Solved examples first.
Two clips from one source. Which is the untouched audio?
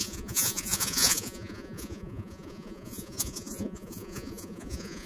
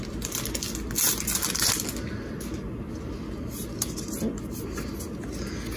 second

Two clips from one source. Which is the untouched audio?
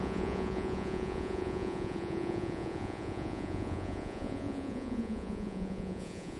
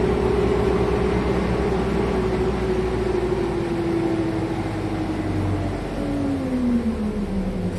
second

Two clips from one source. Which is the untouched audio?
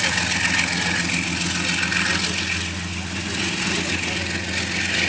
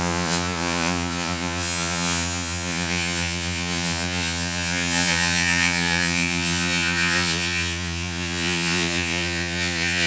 first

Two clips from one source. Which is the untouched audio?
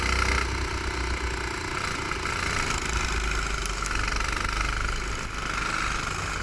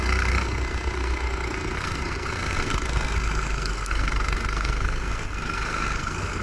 first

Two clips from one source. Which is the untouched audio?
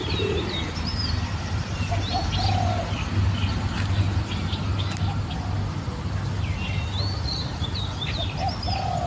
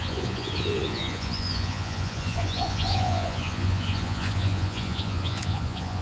first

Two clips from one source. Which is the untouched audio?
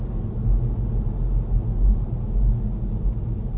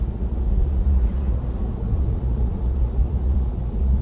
first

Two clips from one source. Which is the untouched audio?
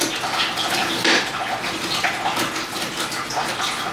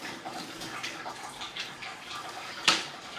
first